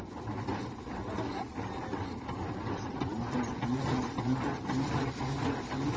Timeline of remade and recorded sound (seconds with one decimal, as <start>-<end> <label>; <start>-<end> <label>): 0.0-1.5 recorded; 1.5-4.5 remade; 4.5-6.0 recorded

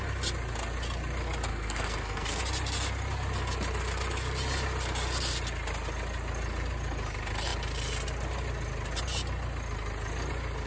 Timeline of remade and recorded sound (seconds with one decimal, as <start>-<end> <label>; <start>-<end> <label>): 0.0-1.5 recorded; 1.5-2.4 remade; 2.4-10.7 recorded

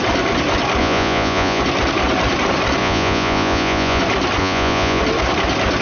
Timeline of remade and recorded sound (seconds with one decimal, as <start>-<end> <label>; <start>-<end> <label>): 0.0-0.8 recorded; 0.8-1.6 remade; 1.6-2.8 recorded; 2.8-4.0 remade; 4.0-4.4 recorded; 4.4-5.0 remade; 5.0-5.8 recorded